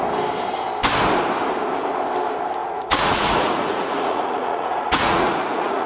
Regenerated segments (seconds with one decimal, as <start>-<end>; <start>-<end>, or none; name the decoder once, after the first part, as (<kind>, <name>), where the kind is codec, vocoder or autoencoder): 2.6-5.9 (vocoder, Vocos)